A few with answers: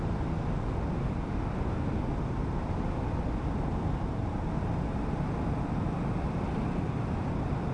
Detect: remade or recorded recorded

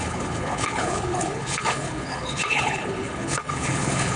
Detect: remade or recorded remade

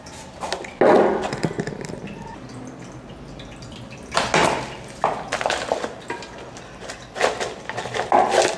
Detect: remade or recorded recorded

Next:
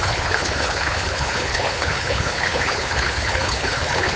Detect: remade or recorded remade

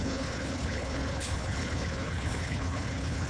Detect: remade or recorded remade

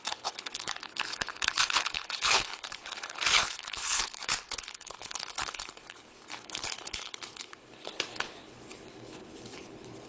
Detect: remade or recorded remade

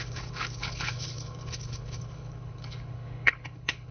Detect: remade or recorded remade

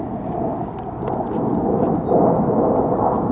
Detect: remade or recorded recorded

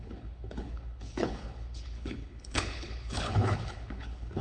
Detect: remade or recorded remade